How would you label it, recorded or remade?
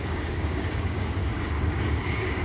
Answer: remade